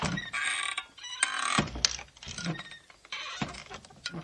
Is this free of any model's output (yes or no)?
yes